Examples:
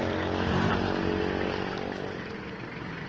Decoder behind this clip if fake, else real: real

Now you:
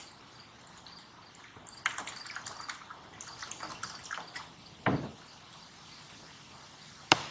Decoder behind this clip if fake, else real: real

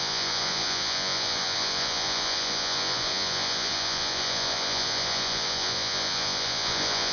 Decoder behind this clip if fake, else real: fake, vocoder, Vocos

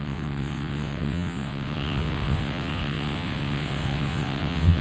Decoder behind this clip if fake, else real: fake, vocoder, WaveNeXt